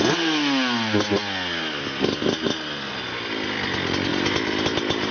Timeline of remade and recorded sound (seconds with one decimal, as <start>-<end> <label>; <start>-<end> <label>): 0.0-4.1 recorded; 4.1-5.1 remade